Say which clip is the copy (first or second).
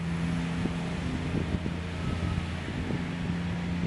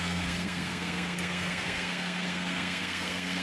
second